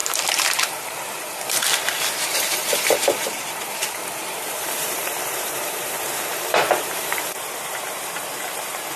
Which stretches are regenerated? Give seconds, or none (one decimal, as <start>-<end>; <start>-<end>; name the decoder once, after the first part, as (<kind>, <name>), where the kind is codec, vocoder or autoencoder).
0.0-9.0 (vocoder, BigVGAN v2)